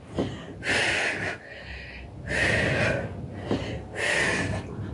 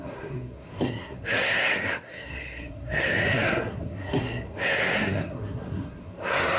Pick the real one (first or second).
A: first